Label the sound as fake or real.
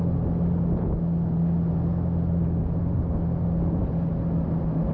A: real